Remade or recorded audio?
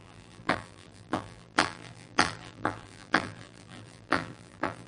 remade